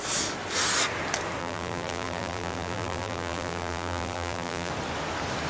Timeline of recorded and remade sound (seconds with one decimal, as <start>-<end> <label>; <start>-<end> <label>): 0.0-1.4 recorded; 1.4-4.7 remade; 4.7-5.5 recorded